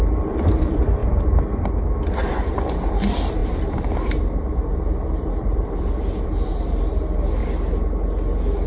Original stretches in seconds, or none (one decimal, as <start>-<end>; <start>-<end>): 7.4-8.7